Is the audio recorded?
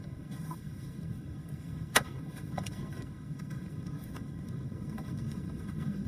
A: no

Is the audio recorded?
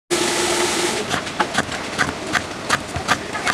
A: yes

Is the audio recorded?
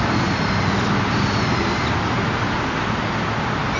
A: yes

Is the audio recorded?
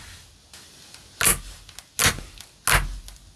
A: yes